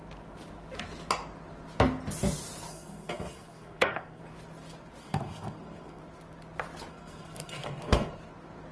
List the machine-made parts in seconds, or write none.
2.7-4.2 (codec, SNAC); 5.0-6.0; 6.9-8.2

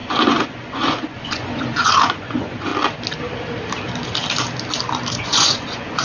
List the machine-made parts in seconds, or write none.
0.0-2.7 (vocoder, Vocos); 5.1-6.0